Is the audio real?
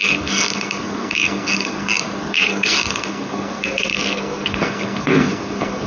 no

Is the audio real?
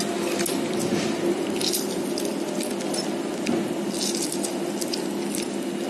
yes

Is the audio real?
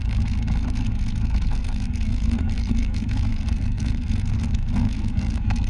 no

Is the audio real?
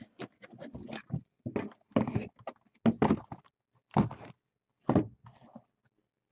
yes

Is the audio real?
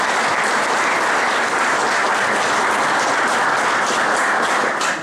yes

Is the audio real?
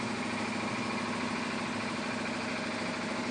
yes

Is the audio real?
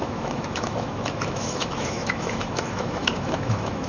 no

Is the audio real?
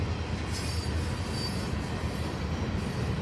yes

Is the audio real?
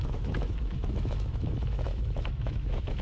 no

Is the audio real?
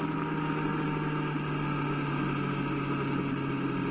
yes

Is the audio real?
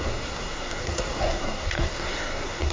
no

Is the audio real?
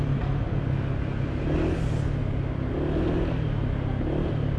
yes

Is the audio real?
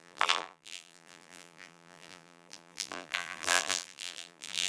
no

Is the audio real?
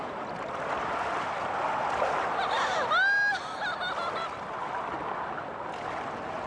yes